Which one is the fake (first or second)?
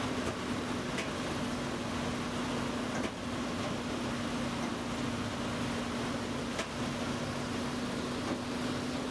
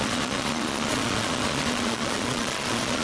second